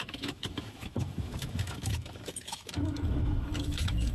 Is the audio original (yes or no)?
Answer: no